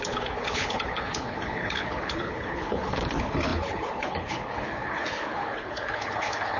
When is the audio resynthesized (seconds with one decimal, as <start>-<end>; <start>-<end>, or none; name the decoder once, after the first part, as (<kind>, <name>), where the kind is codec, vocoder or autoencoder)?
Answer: 0.0-6.6 (codec, HILCodec)